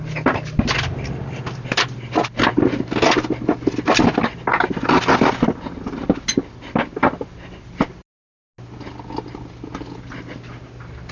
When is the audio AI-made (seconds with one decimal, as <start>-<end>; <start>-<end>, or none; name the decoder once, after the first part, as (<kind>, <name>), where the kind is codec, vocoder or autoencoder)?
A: none